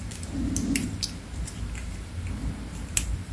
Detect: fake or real real